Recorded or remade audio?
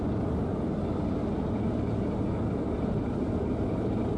recorded